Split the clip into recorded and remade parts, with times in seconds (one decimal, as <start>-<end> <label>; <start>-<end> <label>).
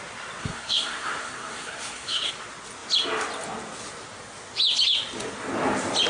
0.0-0.4 recorded; 0.4-2.3 remade; 2.3-6.1 recorded